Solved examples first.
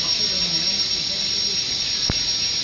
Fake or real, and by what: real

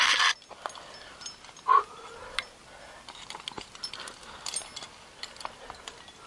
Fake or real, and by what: real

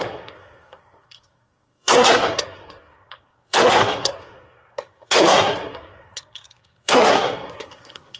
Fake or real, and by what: fake, codec, SNAC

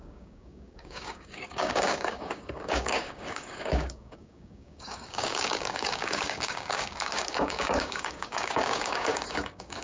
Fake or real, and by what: fake, codec, DAC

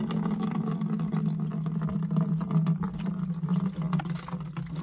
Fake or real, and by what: real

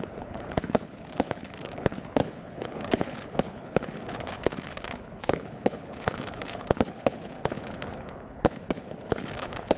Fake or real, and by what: fake, codec, HILCodec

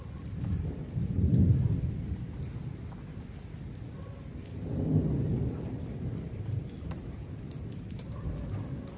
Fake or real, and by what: fake, vocoder, BigVGAN v2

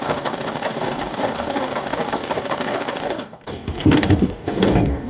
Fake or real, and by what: fake, codec, DAC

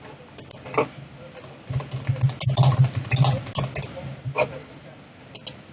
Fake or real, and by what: real